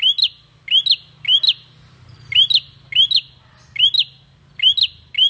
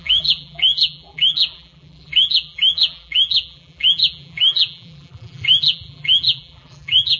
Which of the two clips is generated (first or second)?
second